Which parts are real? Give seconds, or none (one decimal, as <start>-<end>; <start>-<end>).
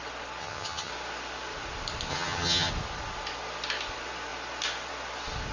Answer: 0.0-0.4; 0.9-2.1; 2.7-5.5